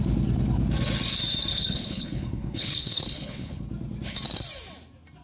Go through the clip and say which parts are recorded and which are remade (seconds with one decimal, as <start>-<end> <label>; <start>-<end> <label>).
0.0-1.5 recorded; 1.5-3.6 remade; 3.6-5.2 recorded